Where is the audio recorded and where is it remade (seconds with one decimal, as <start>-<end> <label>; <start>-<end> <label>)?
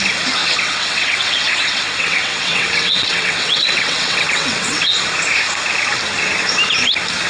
0.0-0.4 recorded; 0.4-4.8 remade; 4.8-7.3 recorded